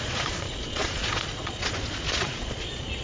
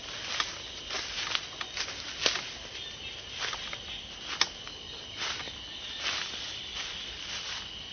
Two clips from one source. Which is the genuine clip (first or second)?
second